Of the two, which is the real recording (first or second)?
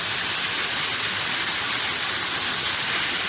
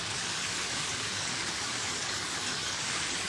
first